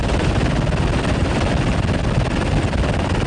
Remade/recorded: recorded